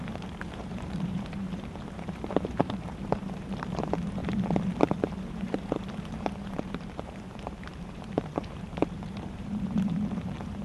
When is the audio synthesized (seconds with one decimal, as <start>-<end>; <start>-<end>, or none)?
0.0-4.2; 4.8-10.6